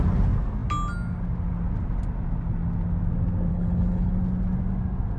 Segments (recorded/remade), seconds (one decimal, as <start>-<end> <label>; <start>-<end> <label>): 0.0-3.5 recorded; 3.5-4.1 remade; 4.1-5.2 recorded